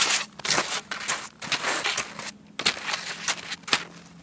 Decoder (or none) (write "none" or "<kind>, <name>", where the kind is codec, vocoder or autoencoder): none